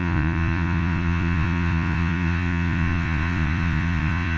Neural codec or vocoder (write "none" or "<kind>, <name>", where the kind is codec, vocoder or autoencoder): vocoder, Vocos